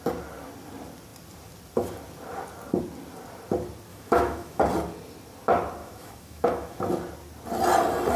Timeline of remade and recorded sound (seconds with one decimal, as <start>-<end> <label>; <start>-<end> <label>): 0.0-3.9 recorded; 3.9-4.6 remade; 4.6-5.8 recorded; 5.8-6.8 remade; 6.8-8.2 recorded